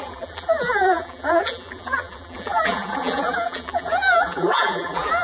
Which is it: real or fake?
fake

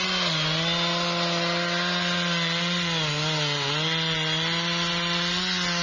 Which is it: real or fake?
real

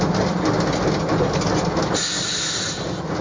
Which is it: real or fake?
real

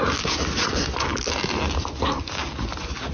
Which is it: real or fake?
real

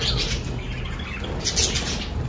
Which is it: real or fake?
real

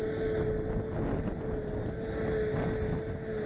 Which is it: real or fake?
real